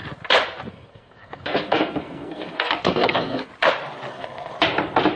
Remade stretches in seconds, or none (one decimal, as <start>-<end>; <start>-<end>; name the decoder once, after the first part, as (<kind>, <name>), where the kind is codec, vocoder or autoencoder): 0.7-3.5 (codec, SNAC); 4.1-4.5